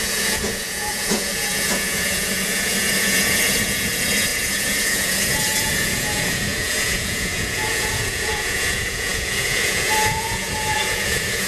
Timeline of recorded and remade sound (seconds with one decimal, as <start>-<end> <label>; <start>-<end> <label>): 0.0-11.5 remade